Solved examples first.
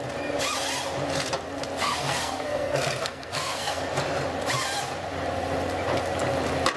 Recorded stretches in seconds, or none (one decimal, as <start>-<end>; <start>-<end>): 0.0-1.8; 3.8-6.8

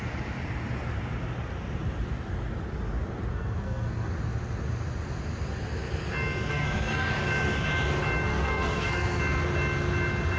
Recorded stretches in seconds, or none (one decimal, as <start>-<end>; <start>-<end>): 0.0-3.3; 4.1-6.5; 7.1-8.3; 9.2-10.4

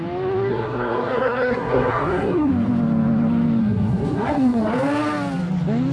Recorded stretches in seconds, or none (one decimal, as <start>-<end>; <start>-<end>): 0.0-0.5; 2.5-3.6; 4.6-5.9

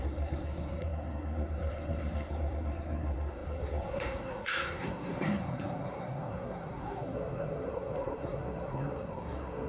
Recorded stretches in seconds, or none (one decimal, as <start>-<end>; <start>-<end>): none

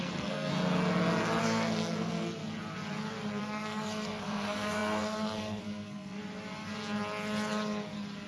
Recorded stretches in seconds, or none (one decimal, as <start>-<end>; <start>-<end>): 0.5-1.4; 2.4-3.4; 6.2-8.3

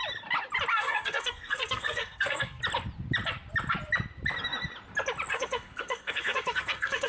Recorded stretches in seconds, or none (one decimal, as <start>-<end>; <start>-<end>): 0.0-0.7; 2.6-5.3

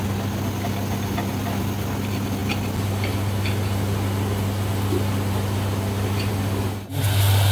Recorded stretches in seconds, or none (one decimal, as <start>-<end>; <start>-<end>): 0.0-7.5

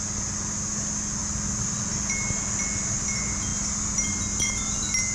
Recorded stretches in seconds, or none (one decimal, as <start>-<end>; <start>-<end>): 0.0-5.1